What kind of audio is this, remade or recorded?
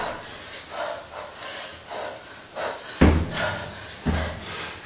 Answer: recorded